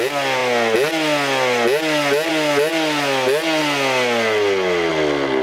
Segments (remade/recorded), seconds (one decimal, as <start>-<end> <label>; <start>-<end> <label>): 0.0-5.4 recorded